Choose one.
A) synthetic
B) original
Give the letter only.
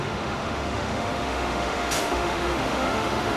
A